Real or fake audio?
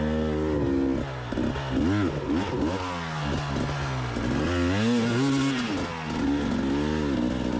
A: real